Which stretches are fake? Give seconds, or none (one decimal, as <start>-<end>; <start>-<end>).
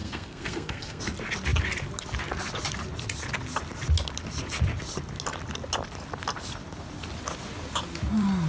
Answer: 0.0-1.0